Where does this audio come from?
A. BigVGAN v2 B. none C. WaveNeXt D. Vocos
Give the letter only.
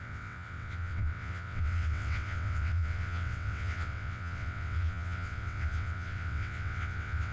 C